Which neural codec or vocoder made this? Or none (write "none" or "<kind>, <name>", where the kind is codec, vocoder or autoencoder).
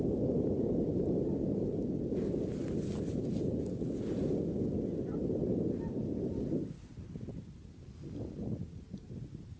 none